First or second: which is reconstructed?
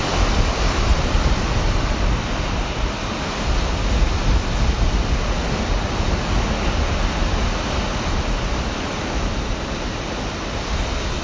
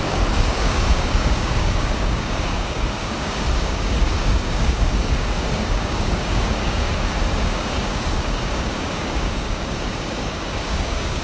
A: second